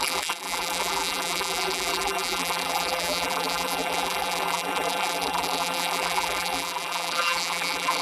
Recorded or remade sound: remade